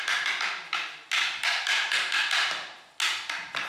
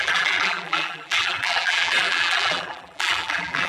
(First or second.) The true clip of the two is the first